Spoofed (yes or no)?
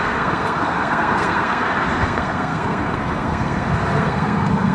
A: yes